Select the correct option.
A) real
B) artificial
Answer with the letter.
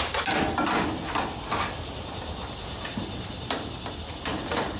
A